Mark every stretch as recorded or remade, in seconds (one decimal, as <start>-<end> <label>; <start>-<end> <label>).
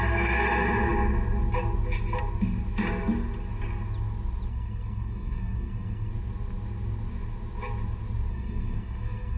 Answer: 0.0-4.5 recorded; 4.5-6.1 remade; 6.1-8.3 recorded; 8.3-9.4 remade